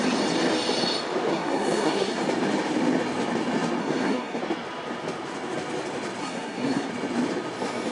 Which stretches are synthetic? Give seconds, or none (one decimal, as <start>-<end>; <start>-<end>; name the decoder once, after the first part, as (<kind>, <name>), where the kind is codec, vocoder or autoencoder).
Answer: 1.3-2.2 (codec, SNAC); 3.8-4.4; 6.2-6.9